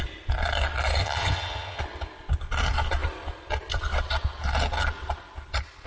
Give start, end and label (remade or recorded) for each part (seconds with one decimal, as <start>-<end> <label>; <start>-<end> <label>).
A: 0.0-1.0 recorded; 1.0-1.8 remade; 1.8-5.9 recorded